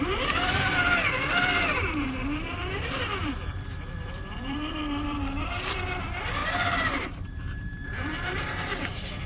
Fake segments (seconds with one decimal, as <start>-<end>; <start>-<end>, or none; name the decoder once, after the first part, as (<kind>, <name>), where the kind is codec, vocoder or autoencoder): 0.0-0.8 (vocoder, BigVGAN v2); 1.7-9.3